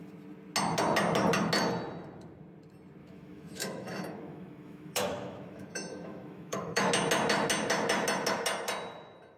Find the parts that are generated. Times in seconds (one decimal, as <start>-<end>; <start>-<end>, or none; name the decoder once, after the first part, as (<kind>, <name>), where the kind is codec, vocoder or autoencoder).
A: 3.0-6.9 (autoencoder, DAC-VAE)